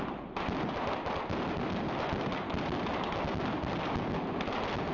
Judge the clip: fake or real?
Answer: real